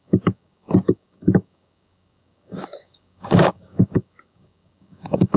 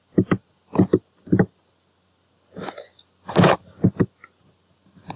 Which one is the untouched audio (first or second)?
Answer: second